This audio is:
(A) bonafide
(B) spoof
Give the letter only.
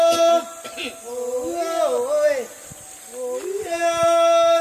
A